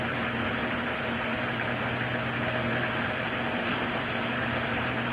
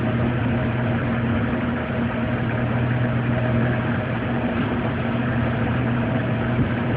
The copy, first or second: second